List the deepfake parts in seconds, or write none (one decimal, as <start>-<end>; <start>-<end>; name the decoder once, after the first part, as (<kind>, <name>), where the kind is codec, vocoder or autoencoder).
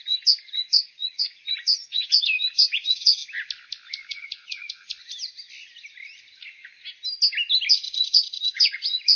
0.0-3.2 (vocoder, Vocos); 4.1-4.9; 7.7-9.2